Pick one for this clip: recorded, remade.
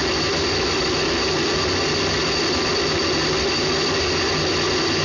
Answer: recorded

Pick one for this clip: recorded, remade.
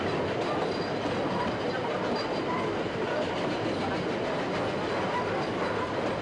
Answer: recorded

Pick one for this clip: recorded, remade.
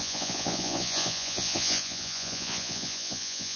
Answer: remade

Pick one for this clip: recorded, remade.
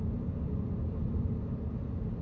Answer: recorded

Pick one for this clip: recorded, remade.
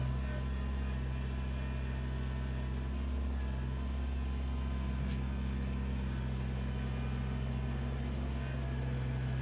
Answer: recorded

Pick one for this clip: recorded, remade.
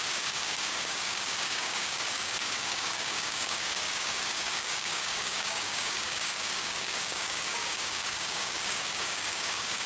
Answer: remade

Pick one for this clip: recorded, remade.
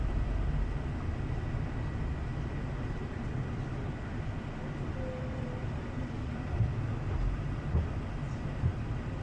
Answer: recorded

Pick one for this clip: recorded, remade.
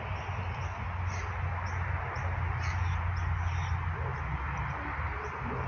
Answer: recorded